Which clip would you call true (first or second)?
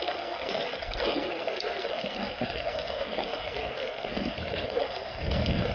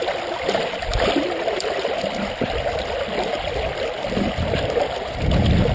second